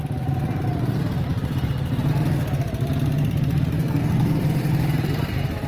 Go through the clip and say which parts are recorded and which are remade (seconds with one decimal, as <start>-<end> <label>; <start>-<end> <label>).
0.0-3.8 recorded; 3.8-4.4 remade; 4.4-5.7 recorded